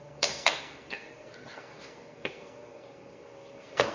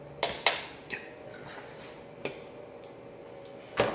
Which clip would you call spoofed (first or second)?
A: first